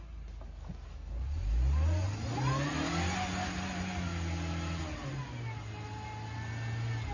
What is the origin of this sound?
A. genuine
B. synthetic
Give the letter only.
A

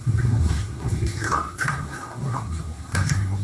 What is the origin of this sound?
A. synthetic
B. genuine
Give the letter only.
A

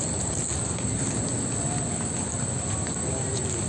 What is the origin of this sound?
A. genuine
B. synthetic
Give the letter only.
A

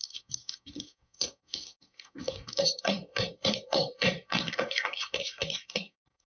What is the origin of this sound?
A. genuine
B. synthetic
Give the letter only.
B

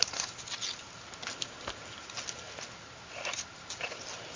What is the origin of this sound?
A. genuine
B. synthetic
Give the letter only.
A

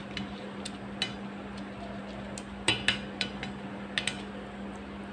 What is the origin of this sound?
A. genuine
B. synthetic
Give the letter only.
A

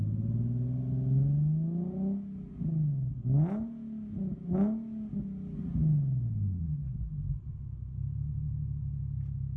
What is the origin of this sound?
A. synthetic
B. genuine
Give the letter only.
B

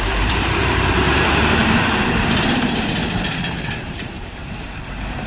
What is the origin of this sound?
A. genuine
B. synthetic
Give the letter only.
B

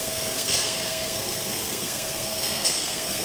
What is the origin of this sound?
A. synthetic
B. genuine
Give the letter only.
A